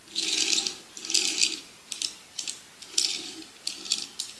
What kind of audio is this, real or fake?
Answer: real